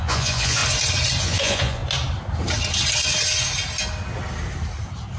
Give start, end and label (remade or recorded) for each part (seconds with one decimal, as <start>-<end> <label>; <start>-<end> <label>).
0.0-0.6 remade; 0.6-1.2 recorded; 1.2-1.8 remade; 1.8-5.2 recorded